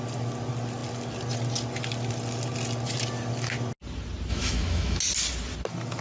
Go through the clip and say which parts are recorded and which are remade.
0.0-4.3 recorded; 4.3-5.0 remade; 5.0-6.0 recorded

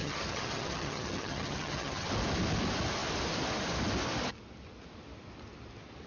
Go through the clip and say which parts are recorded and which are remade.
0.0-2.1 remade; 2.1-6.1 recorded

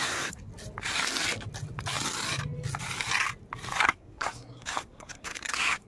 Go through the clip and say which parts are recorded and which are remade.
0.0-0.5 remade; 0.5-3.8 recorded; 3.8-5.9 remade

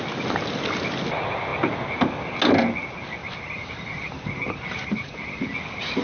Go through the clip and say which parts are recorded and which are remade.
0.0-3.2 recorded; 3.2-5.4 remade; 5.4-6.0 recorded

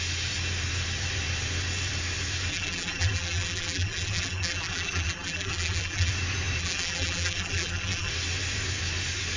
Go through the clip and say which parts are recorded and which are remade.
0.0-2.5 recorded; 2.5-6.1 remade; 6.1-6.6 recorded; 6.6-8.1 remade; 8.1-9.4 recorded

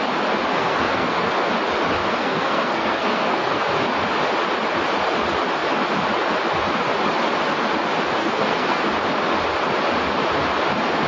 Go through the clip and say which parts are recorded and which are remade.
0.0-0.5 recorded; 0.5-1.5 remade; 1.5-2.0 recorded; 2.0-3.6 remade; 3.6-8.2 recorded; 8.2-8.8 remade; 8.8-11.1 recorded

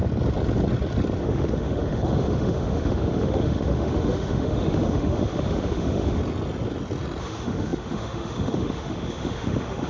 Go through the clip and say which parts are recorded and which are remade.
0.0-1.2 recorded; 1.2-6.2 remade; 6.2-7.2 recorded; 7.2-9.9 remade